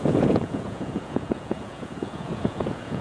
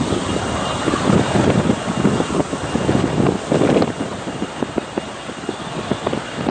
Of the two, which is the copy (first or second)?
first